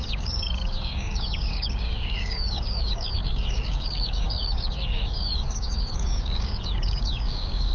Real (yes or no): no